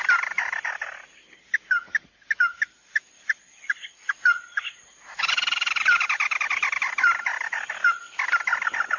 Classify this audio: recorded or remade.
recorded